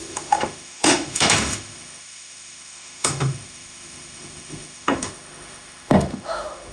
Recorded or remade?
remade